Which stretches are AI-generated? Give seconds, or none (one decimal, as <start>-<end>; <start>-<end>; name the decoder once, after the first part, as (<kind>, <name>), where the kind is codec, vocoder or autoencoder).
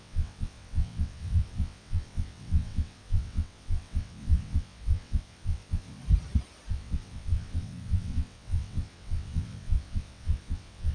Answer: 0.0-6.0 (vocoder, WaveNeXt); 6.7-10.9